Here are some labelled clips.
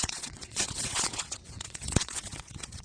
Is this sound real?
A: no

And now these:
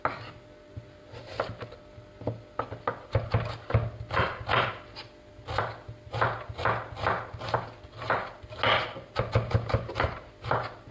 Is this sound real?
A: yes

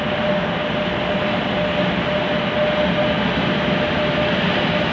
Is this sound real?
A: yes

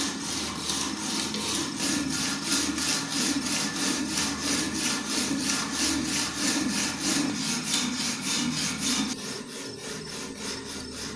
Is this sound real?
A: yes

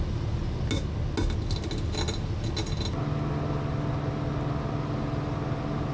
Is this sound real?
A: yes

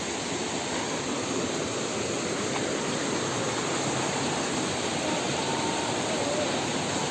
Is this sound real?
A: yes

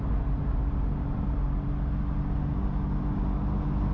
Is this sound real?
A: yes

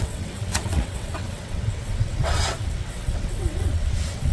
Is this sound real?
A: no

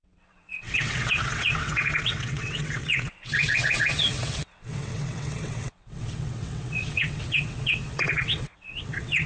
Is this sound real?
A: no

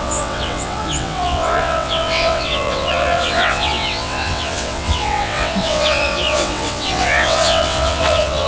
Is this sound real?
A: no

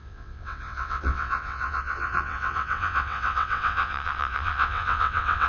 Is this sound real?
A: no